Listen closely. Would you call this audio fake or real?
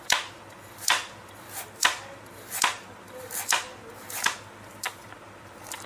real